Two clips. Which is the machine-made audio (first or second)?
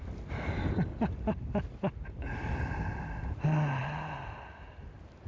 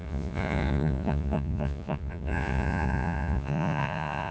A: second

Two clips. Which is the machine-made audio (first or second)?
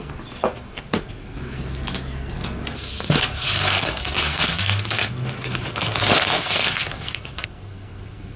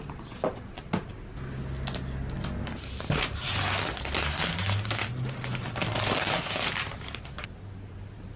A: first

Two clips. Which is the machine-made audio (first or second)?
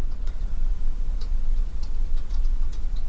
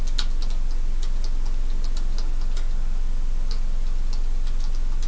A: first